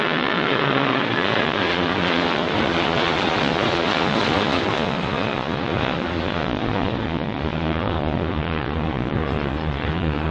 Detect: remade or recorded remade